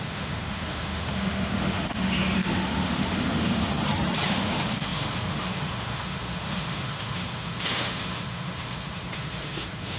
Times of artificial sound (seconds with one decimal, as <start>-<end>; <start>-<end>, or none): 0.0-3.7; 4.3-10.0